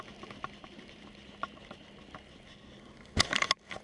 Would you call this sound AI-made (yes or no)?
no